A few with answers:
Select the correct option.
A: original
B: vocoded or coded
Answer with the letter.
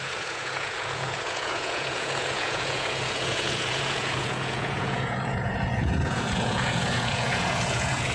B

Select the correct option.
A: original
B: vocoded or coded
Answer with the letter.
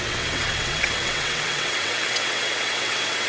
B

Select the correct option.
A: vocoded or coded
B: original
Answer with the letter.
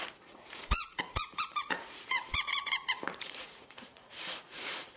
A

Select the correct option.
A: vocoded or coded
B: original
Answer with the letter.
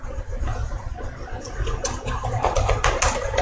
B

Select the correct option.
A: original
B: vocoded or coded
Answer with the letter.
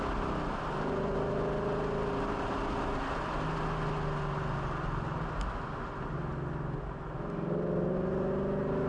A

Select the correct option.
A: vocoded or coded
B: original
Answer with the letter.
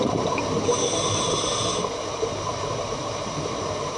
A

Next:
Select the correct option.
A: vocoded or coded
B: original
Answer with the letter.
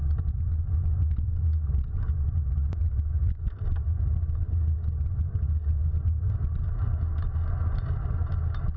B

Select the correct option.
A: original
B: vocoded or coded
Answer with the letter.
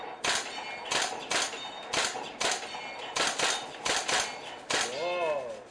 A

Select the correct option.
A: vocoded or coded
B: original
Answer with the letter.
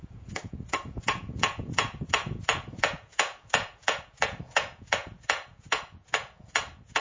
A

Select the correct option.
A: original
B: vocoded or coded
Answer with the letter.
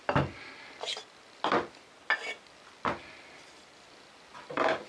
A